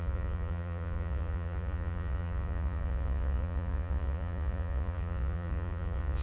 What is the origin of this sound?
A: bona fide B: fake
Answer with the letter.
B